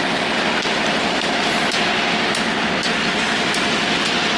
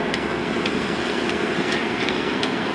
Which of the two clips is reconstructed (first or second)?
second